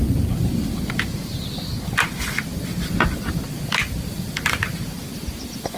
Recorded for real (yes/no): yes